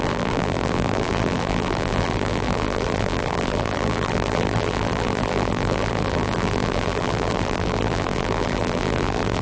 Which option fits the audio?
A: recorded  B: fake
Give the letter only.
B